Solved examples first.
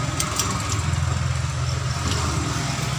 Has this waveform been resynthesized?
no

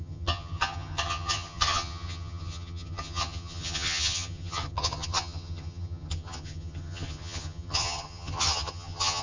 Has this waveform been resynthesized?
yes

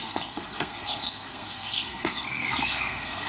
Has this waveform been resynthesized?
yes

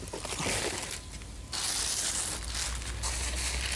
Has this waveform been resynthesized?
no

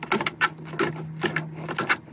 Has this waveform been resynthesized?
no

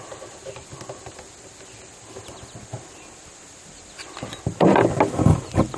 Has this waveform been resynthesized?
no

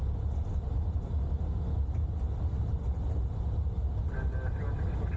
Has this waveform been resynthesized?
no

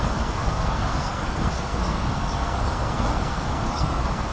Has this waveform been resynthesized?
yes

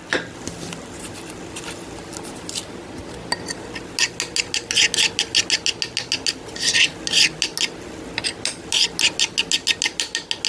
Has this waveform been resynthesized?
no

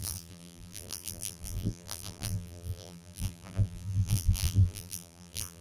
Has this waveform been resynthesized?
yes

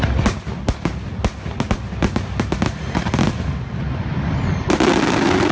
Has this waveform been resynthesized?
no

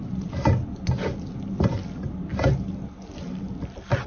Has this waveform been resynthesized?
no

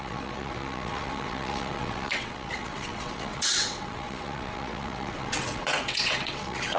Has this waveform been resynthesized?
yes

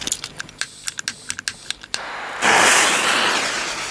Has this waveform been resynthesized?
no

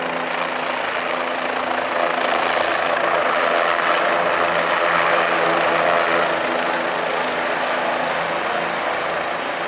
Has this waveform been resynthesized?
no